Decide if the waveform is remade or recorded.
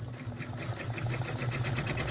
recorded